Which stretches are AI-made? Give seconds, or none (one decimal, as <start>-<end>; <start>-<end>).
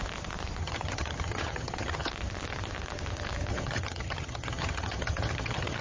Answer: 0.6-2.1; 3.5-5.8